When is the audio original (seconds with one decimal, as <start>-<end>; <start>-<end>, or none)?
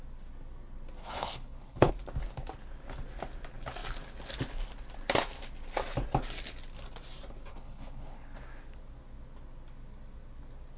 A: 0.0-1.0; 1.9-7.5; 8.4-10.8